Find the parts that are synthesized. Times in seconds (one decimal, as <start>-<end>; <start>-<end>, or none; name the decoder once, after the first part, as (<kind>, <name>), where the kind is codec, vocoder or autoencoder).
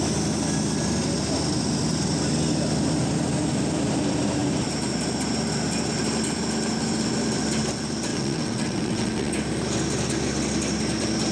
8.1-9.3 (vocoder, WaveNeXt)